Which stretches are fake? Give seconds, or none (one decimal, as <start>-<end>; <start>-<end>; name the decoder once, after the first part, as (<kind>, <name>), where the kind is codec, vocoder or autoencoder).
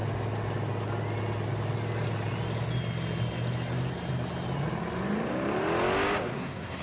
6.2-6.8 (codec, SNAC)